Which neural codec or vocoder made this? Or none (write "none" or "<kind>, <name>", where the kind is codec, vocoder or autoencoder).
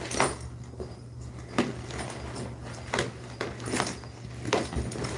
none